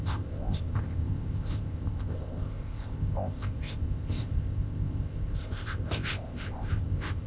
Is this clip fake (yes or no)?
yes